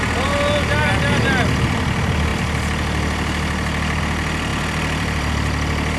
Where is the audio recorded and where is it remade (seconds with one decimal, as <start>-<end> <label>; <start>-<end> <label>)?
0.0-4.5 recorded; 4.5-5.3 remade; 5.3-6.0 recorded